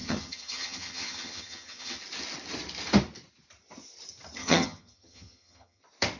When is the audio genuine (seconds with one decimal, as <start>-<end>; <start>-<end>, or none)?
2.0-4.4; 5.8-6.2